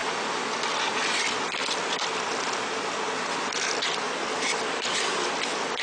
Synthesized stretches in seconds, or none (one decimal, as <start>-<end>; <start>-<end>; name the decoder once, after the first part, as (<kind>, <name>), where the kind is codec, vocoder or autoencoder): none